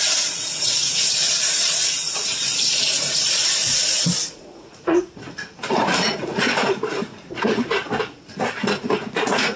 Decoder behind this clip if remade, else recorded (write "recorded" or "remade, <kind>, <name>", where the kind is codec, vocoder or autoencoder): remade, vocoder, Vocos